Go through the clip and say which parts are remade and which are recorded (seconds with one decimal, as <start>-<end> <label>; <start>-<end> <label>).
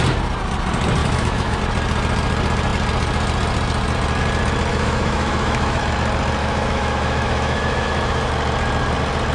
0.0-1.0 recorded; 1.0-1.6 remade; 1.6-4.7 recorded; 4.7-5.8 remade; 5.8-6.4 recorded; 6.4-8.3 remade; 8.3-9.3 recorded